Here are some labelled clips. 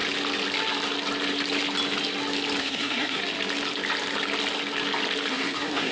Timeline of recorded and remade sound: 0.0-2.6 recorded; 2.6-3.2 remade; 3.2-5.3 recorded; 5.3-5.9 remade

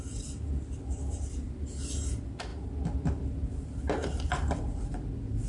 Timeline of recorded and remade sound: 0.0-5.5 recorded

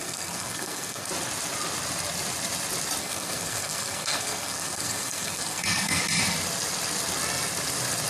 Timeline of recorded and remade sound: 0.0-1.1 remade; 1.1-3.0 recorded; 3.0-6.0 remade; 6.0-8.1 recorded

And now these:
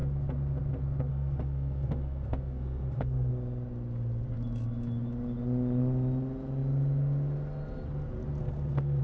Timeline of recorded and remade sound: 0.0-1.1 recorded; 1.1-3.3 remade; 3.3-8.4 recorded; 8.4-9.0 remade